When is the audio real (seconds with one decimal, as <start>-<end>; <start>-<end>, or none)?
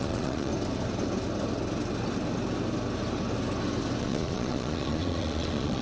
0.5-4.0